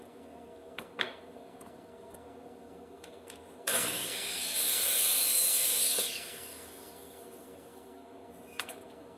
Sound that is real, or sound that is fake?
fake